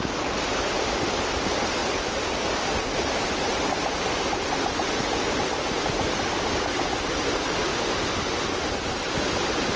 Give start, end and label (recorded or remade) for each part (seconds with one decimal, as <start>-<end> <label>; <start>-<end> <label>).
0.0-1.8 recorded; 1.8-2.8 remade; 2.8-9.8 recorded